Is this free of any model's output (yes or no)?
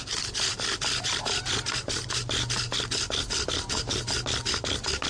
yes